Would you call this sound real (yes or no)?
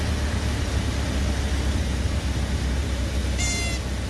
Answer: yes